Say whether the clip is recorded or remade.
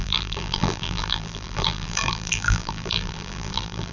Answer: remade